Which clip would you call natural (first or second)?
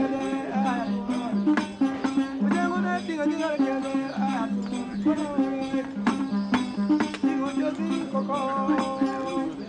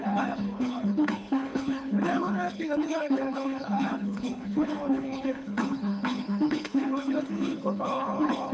first